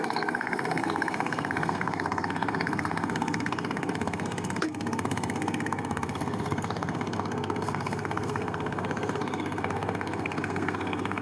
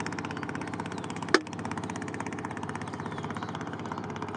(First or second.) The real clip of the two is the second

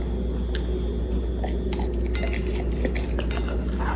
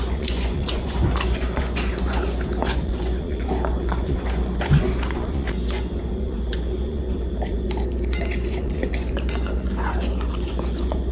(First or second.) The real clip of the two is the first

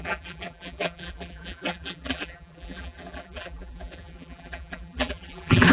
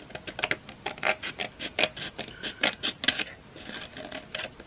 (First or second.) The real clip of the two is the second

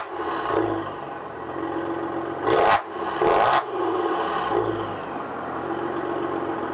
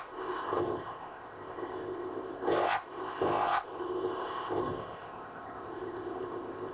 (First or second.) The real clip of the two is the first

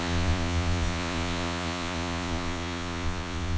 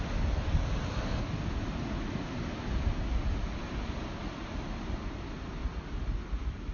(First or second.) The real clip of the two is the second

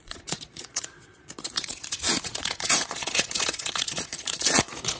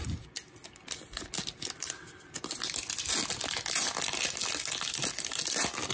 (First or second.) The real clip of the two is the second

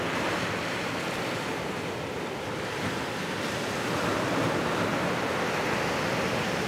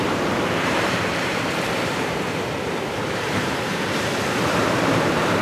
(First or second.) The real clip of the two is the first